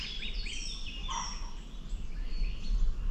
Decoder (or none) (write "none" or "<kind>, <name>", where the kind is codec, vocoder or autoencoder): none